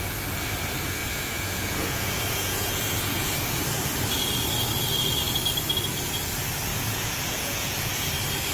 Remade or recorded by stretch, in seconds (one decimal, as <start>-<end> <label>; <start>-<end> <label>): 0.0-1.0 recorded; 1.0-3.3 remade; 3.3-6.7 recorded; 6.7-8.1 remade; 8.1-8.5 recorded